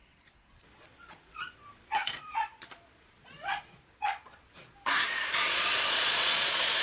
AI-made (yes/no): yes